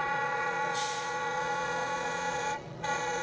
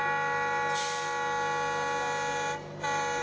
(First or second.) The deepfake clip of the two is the first